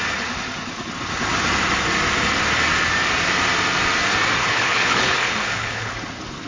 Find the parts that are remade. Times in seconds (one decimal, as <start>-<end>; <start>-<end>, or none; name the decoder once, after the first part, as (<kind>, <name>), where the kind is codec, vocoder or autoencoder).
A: 4.4-5.9 (codec, HILCodec)